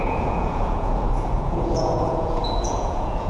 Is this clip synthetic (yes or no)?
yes